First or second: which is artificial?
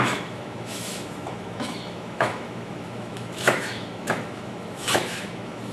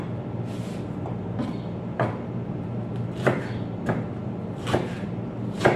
first